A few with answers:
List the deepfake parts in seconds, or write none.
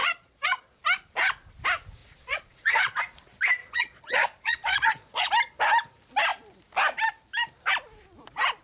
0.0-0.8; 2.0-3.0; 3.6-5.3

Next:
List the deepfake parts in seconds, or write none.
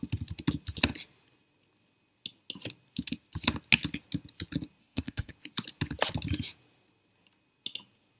4.8-5.3